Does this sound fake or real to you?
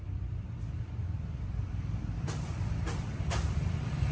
fake